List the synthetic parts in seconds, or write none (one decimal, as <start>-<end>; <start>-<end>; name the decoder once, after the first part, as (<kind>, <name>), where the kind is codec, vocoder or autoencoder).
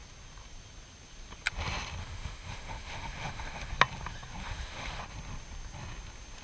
2.0-3.7 (autoencoder, DAC-VAE); 4.4-5.0